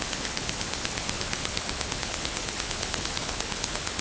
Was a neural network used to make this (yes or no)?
yes